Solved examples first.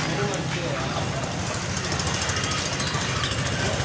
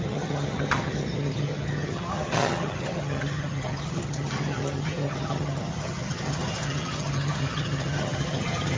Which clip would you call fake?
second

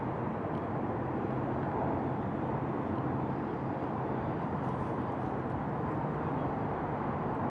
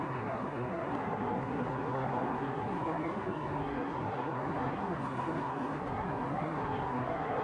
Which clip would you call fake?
second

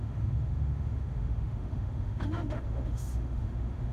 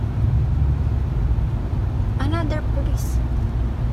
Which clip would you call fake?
first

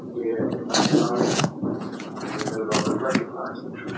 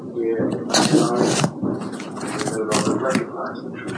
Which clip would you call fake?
first